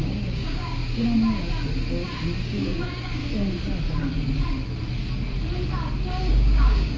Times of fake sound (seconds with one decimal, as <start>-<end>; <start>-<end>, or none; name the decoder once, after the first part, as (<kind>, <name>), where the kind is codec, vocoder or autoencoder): 0.0-0.8 (codec, DAC); 2.4-3.2; 6.3-7.0